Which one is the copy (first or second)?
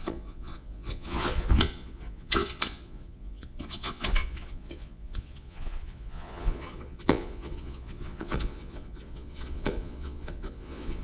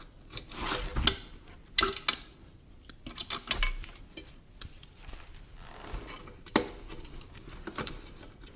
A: first